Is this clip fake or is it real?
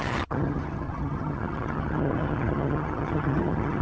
fake